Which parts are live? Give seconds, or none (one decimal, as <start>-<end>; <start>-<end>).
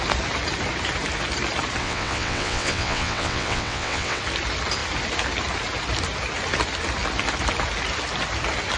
0.0-1.8; 4.2-8.8